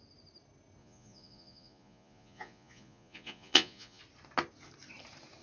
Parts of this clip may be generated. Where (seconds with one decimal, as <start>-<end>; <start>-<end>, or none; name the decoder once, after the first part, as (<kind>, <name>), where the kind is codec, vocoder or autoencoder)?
0.8-4.0 (vocoder, Vocos)